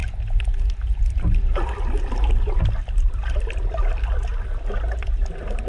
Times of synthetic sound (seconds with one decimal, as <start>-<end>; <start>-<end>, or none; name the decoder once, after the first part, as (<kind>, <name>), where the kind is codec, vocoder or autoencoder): none